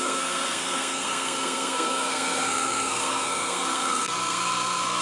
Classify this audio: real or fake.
fake